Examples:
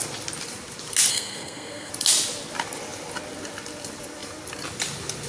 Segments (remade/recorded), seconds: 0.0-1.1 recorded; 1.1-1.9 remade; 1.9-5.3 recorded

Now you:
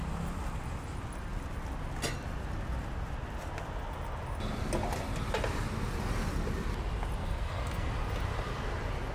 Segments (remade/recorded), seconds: 0.0-7.2 recorded; 7.2-7.9 remade; 7.9-9.1 recorded